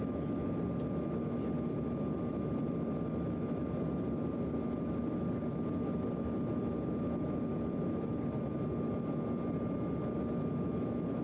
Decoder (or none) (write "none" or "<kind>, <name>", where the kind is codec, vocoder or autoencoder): none